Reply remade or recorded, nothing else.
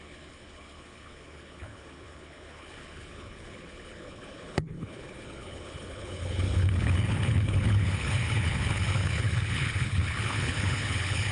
remade